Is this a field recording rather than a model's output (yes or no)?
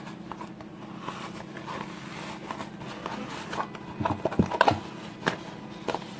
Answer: yes